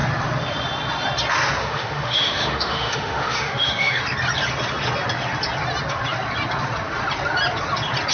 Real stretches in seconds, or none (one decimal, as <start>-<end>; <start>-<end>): 0.0-1.6; 4.0-8.1